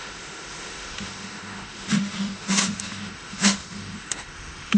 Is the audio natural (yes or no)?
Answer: no